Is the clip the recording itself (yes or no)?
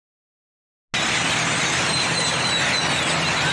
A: yes